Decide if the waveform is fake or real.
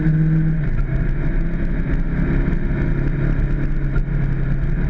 real